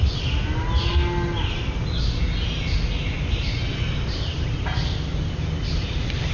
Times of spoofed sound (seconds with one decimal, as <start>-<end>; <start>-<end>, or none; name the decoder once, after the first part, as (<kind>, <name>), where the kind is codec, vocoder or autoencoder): none